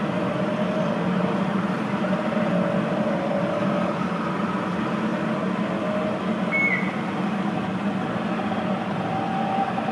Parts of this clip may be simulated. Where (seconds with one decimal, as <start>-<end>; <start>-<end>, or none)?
1.5-3.4